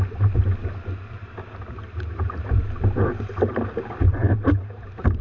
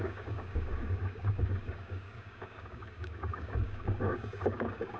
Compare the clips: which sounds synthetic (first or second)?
second